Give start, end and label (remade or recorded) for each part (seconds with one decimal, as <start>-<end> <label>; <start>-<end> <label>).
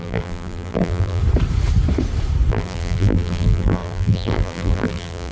0.0-1.2 remade; 1.2-2.5 recorded; 2.5-5.3 remade